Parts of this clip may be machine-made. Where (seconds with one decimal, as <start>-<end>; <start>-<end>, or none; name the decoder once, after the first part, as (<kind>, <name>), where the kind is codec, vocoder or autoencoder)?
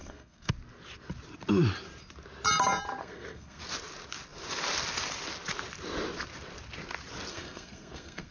0.0-0.5 (codec, SNAC); 3.0-3.6; 7.3-8.3